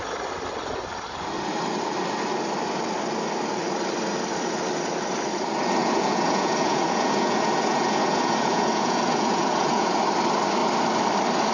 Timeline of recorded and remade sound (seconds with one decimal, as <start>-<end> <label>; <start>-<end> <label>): 0.0-5.8 recorded; 5.8-10.0 remade; 10.0-11.5 recorded